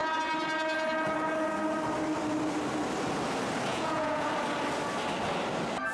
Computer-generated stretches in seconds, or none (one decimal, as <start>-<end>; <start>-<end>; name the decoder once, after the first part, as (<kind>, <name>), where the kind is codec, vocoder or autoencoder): 3.7-4.3 (vocoder, Vocos)